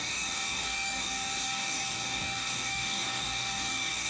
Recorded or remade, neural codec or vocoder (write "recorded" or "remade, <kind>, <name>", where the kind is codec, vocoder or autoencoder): remade, codec, DAC